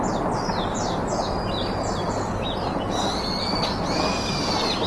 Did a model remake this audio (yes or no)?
no